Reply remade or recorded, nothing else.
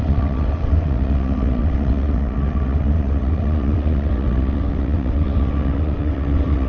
remade